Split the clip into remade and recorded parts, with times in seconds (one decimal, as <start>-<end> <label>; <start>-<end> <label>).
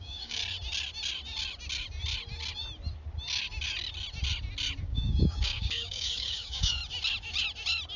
0.0-0.4 remade; 0.4-4.8 recorded; 4.8-6.8 remade; 6.8-8.0 recorded